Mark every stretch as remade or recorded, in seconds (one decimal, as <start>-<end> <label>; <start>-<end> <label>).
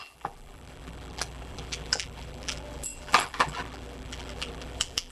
0.0-5.1 remade